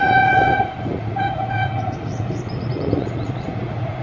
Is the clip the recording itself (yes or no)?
no